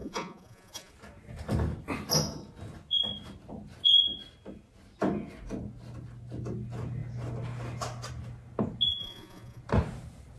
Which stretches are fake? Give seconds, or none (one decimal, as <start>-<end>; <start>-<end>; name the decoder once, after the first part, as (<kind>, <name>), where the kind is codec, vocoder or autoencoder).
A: 0.0-0.9 (vocoder, Vocos); 8.9-9.6